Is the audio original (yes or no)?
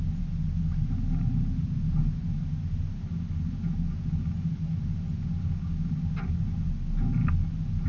yes